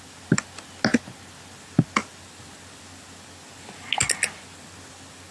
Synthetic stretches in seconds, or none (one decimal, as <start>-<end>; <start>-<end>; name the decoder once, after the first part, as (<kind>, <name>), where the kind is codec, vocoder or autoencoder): none